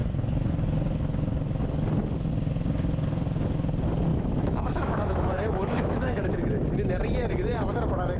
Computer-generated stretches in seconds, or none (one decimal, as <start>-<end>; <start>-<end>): 4.1-6.3